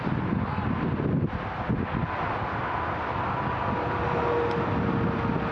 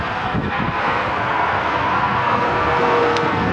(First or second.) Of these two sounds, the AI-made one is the second